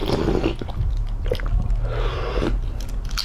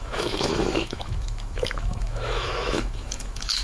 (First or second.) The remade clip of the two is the second